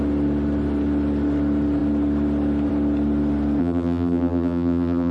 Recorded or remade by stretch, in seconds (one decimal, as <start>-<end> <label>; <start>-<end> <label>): 0.0-3.6 recorded; 3.6-5.1 remade